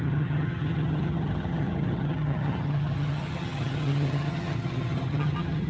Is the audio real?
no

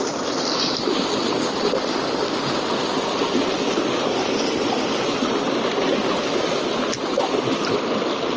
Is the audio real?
yes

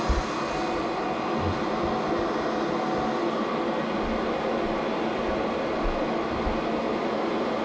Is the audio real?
yes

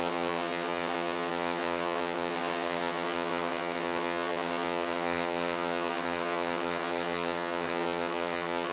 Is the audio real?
no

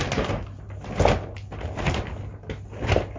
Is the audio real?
yes